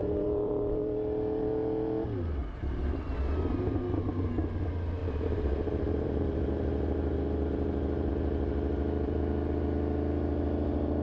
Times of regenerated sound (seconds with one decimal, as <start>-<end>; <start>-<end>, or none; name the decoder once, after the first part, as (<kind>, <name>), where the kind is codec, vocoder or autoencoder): 0.0-0.8 (vocoder, BigVGAN v2); 2.4-3.1; 5.0-8.1